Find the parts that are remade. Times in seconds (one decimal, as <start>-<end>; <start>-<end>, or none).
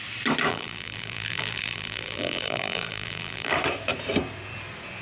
0.5-3.5